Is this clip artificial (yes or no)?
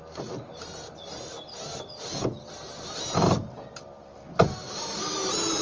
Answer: no